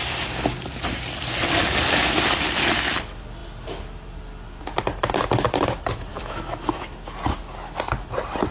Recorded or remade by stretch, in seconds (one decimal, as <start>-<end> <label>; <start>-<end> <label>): 0.0-6.1 recorded; 6.1-6.8 remade; 6.8-8.5 recorded